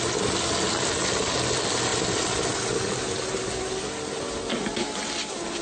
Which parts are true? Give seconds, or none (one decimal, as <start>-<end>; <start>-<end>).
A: 0.0-5.6